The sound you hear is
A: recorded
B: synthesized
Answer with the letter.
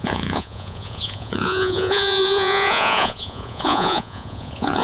B